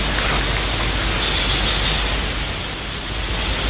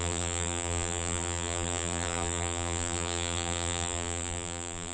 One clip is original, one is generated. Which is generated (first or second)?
second